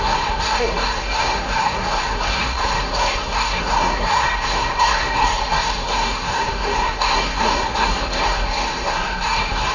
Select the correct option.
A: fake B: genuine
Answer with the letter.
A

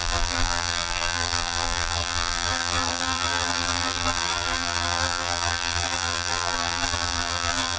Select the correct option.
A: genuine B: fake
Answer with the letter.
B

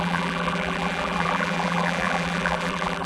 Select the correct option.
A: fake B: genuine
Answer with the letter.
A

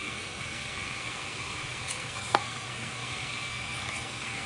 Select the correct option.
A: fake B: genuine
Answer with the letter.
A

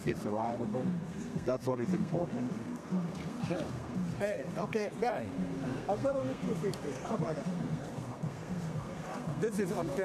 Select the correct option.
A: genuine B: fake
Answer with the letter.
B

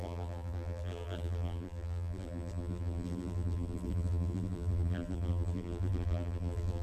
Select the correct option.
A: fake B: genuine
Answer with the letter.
A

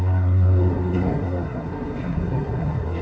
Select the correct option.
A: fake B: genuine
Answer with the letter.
A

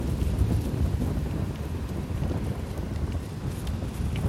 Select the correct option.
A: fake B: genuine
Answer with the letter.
B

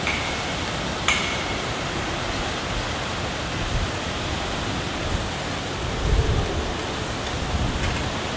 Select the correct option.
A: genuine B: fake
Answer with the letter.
A